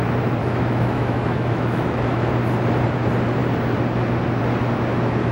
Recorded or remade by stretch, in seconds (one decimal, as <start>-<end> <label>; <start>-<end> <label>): 0.0-0.4 recorded; 0.4-2.3 remade; 2.3-5.3 recorded